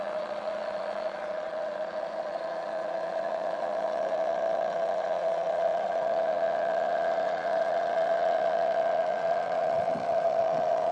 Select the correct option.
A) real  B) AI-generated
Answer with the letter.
B